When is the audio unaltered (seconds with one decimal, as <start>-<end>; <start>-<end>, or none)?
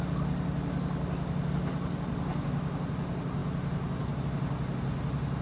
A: 0.0-5.4